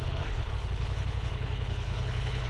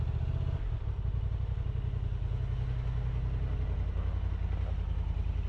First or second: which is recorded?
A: second